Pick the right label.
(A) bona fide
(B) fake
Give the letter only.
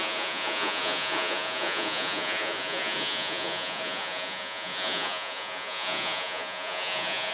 B